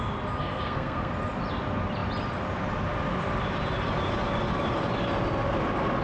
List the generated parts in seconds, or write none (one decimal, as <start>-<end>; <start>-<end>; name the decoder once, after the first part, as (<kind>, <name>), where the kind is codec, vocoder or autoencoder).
0.4-1.1 (codec, SNAC)